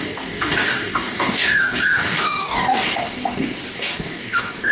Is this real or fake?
fake